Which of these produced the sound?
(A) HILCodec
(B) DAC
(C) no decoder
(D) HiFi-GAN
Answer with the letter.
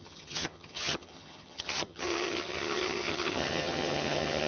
D